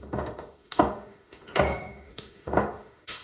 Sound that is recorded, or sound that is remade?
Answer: remade